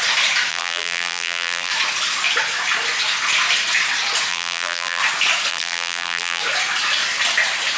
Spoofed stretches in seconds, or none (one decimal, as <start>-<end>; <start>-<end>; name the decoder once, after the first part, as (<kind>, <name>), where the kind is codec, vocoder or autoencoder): 0.5-1.7 (vocoder, BigVGAN v2); 4.3-5.0; 5.5-6.4

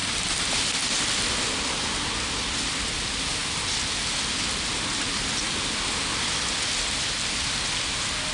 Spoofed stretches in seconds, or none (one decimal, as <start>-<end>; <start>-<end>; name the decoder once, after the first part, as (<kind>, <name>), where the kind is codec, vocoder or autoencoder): none

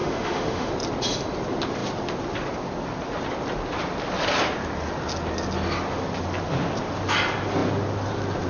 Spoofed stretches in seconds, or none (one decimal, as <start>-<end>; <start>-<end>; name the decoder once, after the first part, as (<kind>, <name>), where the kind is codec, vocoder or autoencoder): 0.0-0.7 (autoencoder, DAC-VAE)

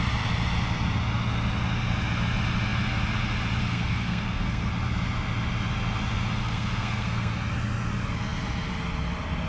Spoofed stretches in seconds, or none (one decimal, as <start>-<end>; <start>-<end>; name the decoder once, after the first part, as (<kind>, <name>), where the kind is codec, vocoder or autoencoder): 3.6-4.7 (codec, SNAC); 6.4-7.3

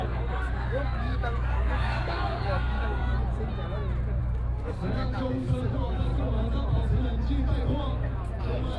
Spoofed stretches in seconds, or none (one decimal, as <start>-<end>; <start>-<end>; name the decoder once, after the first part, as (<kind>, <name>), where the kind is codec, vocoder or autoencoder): 0.0-3.0 (codec, DAC); 4.2-6.1; 8.4-8.8